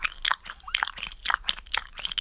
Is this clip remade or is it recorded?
recorded